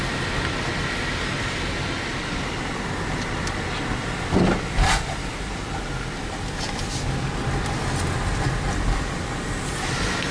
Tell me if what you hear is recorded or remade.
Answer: recorded